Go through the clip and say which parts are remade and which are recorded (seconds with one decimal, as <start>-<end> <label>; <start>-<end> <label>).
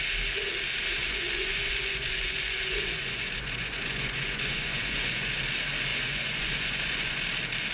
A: 0.0-1.0 recorded; 1.0-5.4 remade; 5.4-5.9 recorded; 5.9-7.2 remade; 7.2-7.7 recorded